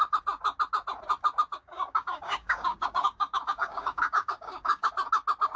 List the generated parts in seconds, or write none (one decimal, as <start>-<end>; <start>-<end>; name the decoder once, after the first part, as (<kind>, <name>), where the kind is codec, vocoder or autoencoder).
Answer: 1.5-4.9 (codec, DAC)

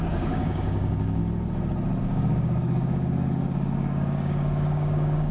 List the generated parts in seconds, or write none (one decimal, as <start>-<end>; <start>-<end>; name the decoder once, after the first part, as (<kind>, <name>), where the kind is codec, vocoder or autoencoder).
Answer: 0.0-1.2 (codec, DAC); 2.0-5.3

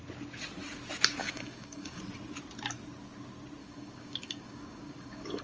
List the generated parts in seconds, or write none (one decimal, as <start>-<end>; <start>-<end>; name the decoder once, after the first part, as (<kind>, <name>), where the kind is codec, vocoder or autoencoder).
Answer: 1.2-2.0 (codec, DAC); 3.6-5.4

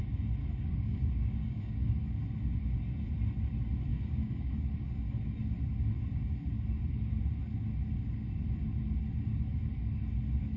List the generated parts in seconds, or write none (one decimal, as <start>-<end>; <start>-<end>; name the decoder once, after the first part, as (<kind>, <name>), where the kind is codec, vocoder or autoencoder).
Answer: 0.4-1.9 (codec, DAC); 3.9-4.5

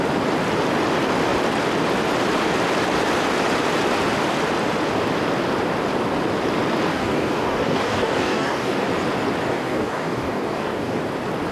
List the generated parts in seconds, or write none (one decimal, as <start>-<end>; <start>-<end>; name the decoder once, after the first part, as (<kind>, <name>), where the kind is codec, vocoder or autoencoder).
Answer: 6.9-8.9 (codec, DAC); 9.5-11.0